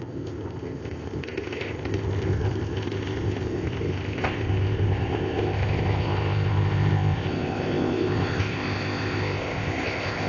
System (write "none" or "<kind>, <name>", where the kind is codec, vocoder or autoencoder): codec, ZipCodec